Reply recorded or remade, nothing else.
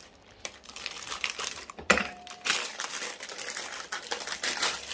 remade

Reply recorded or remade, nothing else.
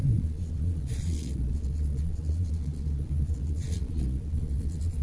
remade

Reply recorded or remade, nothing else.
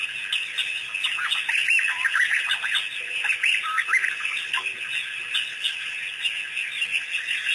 recorded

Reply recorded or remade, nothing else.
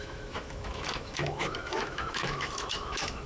remade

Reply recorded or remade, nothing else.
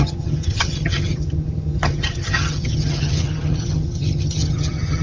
remade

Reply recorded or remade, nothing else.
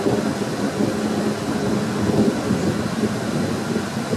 recorded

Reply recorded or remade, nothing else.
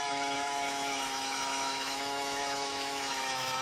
remade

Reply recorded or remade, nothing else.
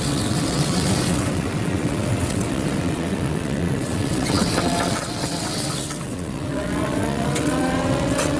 remade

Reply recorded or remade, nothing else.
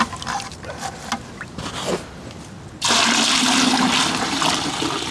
recorded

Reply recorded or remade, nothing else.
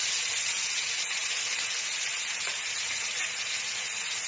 remade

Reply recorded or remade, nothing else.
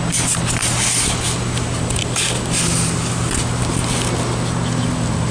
recorded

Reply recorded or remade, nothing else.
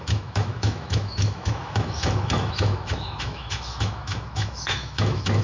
remade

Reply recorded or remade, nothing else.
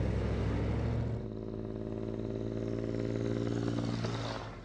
recorded